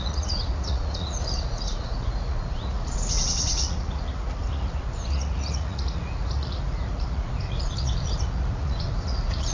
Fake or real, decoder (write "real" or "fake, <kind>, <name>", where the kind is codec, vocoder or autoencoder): fake, vocoder, Vocos